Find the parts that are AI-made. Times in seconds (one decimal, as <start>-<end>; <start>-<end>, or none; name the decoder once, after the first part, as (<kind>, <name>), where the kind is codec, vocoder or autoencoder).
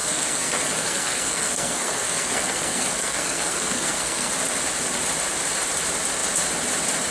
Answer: 0.0-4.3 (codec, SNAC)